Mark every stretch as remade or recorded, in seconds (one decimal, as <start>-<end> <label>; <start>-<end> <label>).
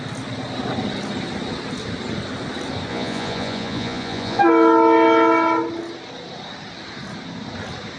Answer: 0.0-2.9 recorded; 2.9-4.4 remade; 4.4-8.0 recorded